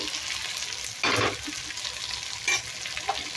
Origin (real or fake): real